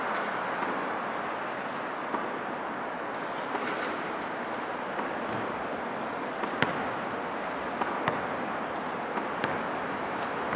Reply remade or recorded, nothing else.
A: recorded